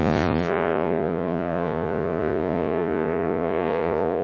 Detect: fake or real fake